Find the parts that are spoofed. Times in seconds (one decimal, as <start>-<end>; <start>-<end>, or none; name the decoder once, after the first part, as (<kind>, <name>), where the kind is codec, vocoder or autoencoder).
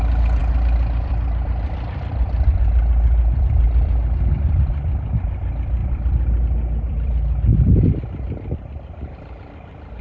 0.0-0.4 (vocoder, BigVGAN v2); 1.1-10.0